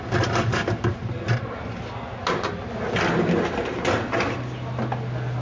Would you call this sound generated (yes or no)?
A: no